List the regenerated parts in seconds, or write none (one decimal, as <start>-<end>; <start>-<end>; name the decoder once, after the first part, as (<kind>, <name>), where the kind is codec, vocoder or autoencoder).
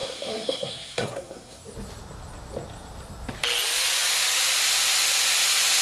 0.0-1.6 (codec, SNAC)